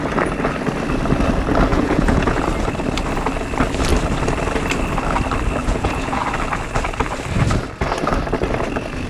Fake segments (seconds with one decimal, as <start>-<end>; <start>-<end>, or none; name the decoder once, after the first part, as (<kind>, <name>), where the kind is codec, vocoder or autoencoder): 1.7-2.4 (vocoder, Vocos); 5.6-6.2